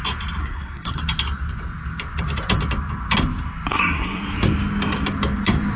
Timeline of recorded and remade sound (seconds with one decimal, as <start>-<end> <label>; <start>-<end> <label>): 0.0-0.4 recorded; 0.4-1.0 remade; 1.0-3.7 recorded; 3.7-4.2 remade; 4.2-5.8 recorded